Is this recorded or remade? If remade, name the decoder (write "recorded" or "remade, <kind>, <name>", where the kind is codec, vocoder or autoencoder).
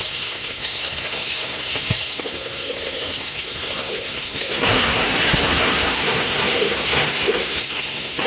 remade, codec, SNAC